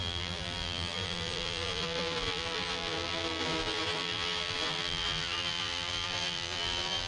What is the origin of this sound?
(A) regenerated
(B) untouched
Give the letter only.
A